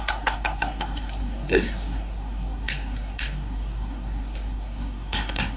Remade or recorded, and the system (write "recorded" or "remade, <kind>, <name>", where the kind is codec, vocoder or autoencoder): remade, codec, SNAC